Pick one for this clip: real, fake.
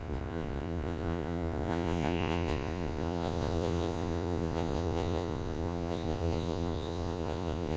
fake